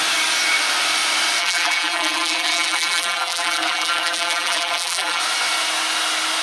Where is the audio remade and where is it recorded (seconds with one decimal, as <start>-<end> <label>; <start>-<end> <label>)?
0.0-1.4 recorded; 1.4-5.2 remade; 5.2-6.4 recorded